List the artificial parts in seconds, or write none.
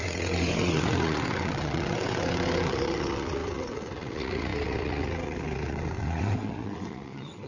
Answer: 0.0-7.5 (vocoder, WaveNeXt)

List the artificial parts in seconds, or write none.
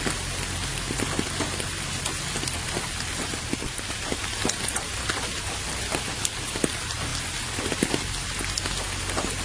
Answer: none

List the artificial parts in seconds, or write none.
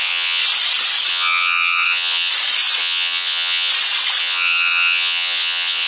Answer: 0.0-0.4 (vocoder, WaveNeXt); 1.1-2.3; 2.8-3.7; 4.2-5.9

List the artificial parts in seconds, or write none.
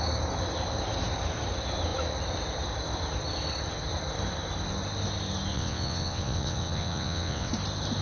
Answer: 5.5-7.5 (vocoder, WaveNeXt)